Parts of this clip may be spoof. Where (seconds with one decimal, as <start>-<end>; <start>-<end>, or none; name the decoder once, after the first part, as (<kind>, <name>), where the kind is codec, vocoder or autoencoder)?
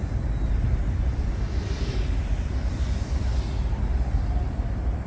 none